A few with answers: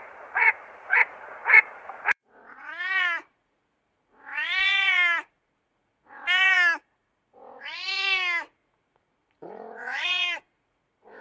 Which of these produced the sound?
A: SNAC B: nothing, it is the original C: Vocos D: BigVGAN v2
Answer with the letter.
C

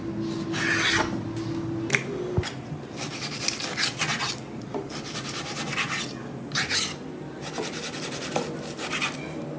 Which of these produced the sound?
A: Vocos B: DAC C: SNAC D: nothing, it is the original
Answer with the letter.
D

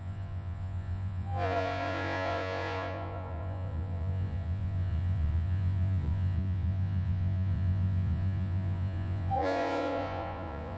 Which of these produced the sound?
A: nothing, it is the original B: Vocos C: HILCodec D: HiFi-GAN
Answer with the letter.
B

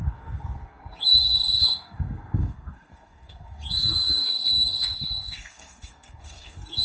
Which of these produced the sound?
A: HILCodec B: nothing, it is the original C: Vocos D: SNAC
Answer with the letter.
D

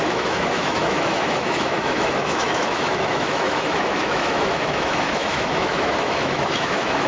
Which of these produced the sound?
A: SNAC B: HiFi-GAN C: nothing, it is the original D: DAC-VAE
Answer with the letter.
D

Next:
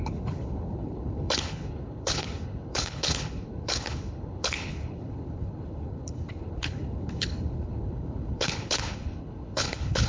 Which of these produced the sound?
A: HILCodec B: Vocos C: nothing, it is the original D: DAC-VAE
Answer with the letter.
A